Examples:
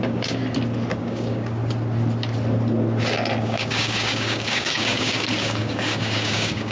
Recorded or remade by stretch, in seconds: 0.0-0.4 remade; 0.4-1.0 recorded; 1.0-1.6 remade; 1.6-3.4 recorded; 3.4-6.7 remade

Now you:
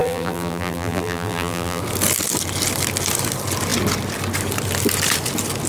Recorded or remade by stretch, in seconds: 0.0-1.8 remade; 1.8-5.7 recorded

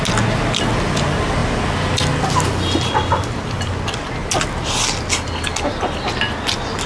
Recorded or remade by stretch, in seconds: 0.0-6.9 recorded

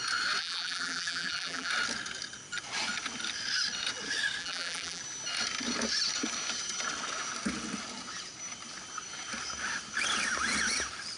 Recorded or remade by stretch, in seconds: 0.0-0.4 recorded; 0.4-1.7 remade; 1.7-4.4 recorded; 4.4-5.0 remade; 5.0-11.2 recorded

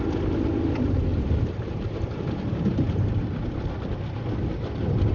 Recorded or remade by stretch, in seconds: 0.0-1.1 recorded; 1.1-3.1 remade; 3.1-5.1 recorded

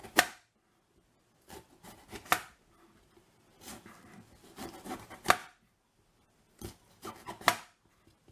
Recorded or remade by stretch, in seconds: 0.0-5.4 recorded; 5.4-7.1 remade; 7.1-8.3 recorded